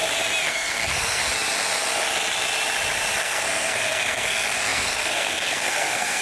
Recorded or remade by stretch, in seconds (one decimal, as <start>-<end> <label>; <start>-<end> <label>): 0.0-0.5 recorded; 0.5-1.2 remade; 1.2-3.2 recorded; 3.2-6.2 remade